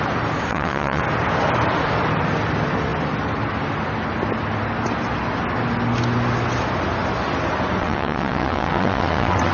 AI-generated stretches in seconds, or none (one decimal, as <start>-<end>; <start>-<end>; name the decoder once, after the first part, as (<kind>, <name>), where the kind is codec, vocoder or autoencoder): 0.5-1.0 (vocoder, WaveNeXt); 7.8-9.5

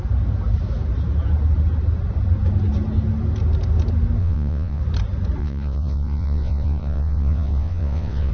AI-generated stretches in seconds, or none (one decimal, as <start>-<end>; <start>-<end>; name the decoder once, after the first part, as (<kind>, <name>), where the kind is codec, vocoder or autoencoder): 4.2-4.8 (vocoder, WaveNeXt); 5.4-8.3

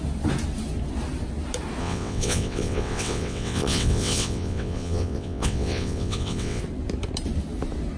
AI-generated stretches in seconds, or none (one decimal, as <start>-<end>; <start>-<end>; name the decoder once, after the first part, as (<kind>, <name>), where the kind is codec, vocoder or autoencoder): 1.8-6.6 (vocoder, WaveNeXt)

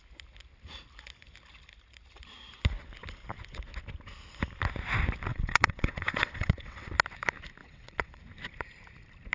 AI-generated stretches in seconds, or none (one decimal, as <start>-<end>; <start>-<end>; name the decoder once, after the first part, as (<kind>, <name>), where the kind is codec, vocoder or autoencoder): 5.3-6.9 (vocoder, WaveNeXt); 7.6-8.2

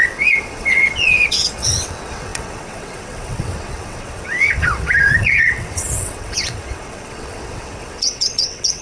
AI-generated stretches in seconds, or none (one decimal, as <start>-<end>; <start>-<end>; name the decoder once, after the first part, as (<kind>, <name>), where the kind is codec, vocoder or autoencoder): 0.0-8.8 (vocoder, WaveNeXt)

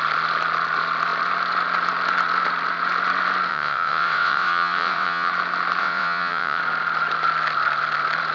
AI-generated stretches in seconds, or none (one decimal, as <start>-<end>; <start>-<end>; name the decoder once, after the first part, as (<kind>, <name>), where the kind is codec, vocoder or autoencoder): 3.5-5.3 (vocoder, WaveNeXt); 5.8-6.6

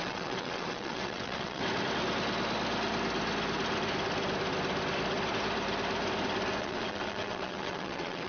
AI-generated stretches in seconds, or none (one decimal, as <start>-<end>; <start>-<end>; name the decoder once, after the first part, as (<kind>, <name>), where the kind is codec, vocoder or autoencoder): 0.0-1.6 (vocoder, WaveNeXt); 6.6-8.3

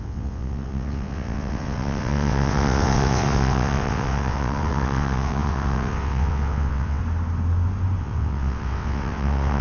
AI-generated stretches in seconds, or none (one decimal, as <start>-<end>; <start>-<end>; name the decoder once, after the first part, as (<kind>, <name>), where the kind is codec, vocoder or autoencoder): 0.0-7.0 (vocoder, WaveNeXt); 8.0-9.6